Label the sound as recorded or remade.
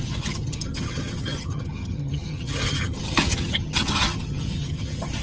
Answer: remade